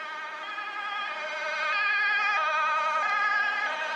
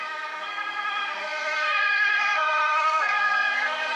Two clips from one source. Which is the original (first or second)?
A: first